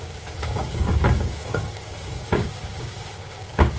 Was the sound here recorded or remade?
remade